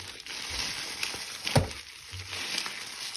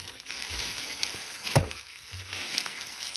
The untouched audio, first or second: first